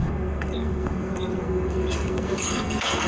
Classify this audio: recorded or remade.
remade